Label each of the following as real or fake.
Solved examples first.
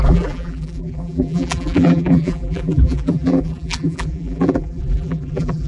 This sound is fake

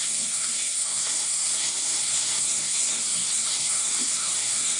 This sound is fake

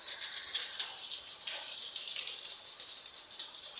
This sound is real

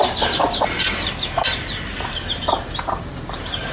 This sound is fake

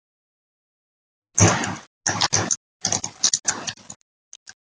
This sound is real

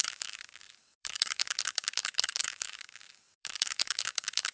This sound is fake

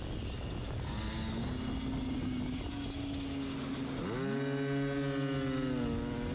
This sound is real